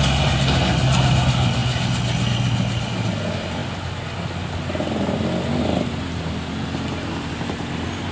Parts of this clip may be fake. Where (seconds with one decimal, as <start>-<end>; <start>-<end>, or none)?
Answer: none